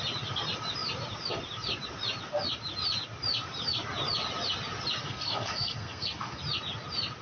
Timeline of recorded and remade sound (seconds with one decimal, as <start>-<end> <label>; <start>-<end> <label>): 0.0-5.0 recorded; 5.0-6.4 remade; 6.4-7.2 recorded